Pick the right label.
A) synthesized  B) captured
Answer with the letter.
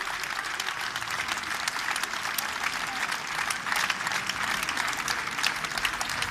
B